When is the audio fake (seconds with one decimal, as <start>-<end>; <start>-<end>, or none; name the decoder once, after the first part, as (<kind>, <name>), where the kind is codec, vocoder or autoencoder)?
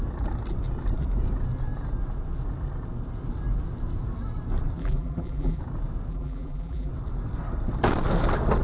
4.8-5.6 (vocoder, BigVGAN v2); 6.1-6.9